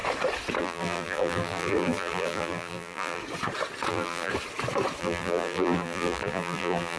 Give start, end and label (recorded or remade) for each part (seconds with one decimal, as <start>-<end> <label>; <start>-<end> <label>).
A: 0.0-0.6 recorded; 0.6-3.2 remade; 3.2-3.9 recorded; 3.9-4.3 remade; 4.3-5.0 recorded; 5.0-7.0 remade